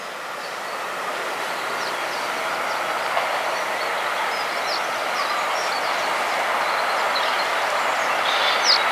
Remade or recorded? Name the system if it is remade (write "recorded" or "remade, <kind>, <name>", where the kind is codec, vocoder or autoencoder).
recorded